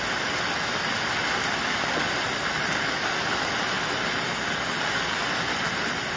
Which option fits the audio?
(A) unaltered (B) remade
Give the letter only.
A